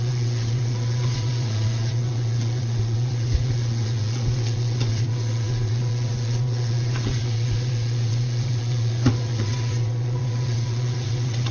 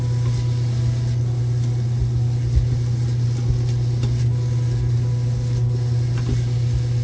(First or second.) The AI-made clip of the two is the first